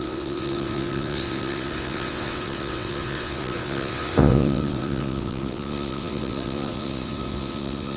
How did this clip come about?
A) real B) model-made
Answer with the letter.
B